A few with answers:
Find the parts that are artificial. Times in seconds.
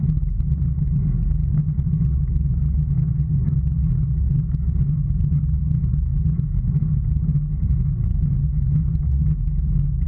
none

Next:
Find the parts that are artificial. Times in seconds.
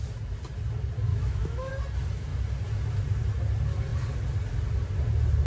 1.1-1.7 (autoencoder, DAC-VAE)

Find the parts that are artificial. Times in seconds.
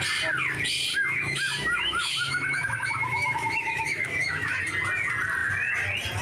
0.9-4.6 (autoencoder, DAC-VAE)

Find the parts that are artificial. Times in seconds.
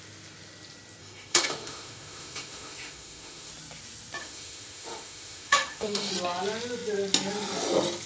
1.0-3.5 (autoencoder, DAC-VAE); 4.2-6.1